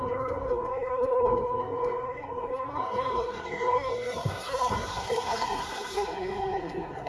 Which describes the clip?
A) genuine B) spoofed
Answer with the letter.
B